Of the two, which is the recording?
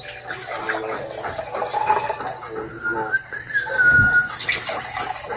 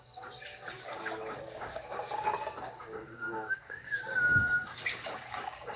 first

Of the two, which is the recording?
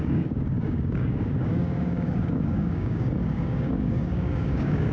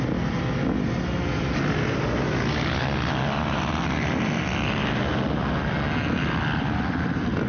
second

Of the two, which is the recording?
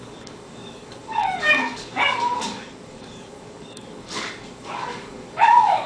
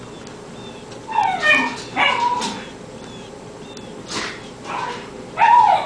second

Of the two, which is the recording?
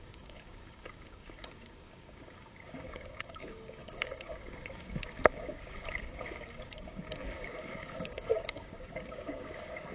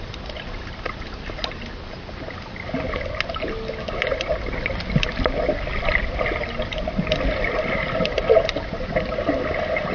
second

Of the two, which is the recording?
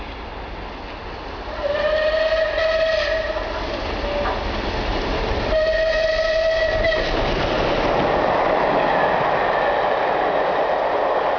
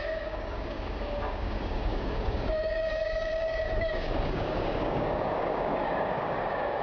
first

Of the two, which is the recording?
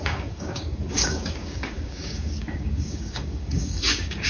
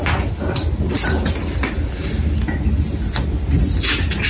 second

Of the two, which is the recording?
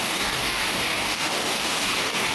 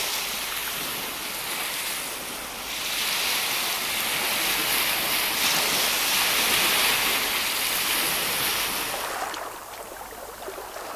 second